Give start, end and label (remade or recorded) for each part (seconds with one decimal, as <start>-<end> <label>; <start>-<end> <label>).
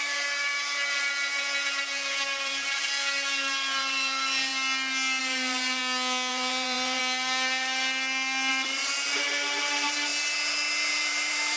0.0-4.5 remade; 4.5-5.2 recorded; 5.2-5.8 remade; 5.8-6.3 recorded; 6.3-7.0 remade; 7.0-8.5 recorded; 8.5-10.1 remade; 10.1-10.9 recorded; 10.9-11.6 remade